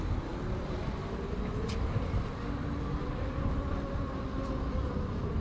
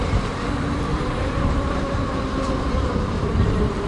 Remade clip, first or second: second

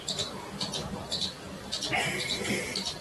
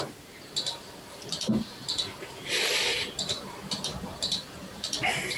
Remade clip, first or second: second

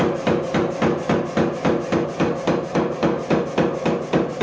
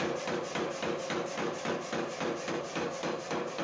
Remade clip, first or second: second